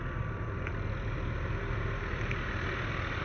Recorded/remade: recorded